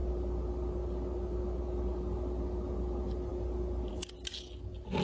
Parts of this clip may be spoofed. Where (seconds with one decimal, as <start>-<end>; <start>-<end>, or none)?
none